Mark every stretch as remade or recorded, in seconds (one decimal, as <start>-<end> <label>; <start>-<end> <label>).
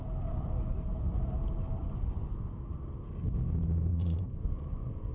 0.0-1.8 recorded; 1.8-2.5 remade; 2.5-3.9 recorded; 3.9-5.1 remade